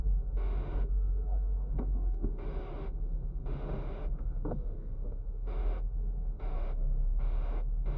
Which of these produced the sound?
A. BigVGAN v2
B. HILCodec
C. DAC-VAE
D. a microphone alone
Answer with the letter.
C